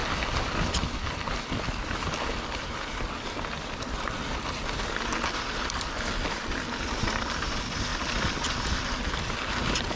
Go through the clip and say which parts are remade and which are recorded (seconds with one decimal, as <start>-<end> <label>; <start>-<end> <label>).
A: 0.0-10.0 recorded